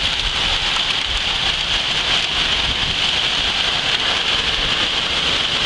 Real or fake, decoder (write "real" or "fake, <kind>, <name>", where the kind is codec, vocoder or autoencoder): real